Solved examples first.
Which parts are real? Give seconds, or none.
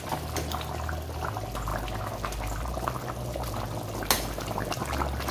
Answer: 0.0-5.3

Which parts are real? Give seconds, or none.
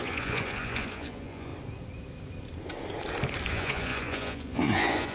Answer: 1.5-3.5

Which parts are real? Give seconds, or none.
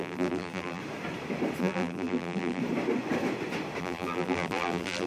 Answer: 0.8-1.6; 2.6-3.8